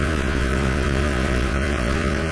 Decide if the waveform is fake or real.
fake